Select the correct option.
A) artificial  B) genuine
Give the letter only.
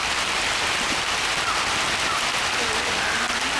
B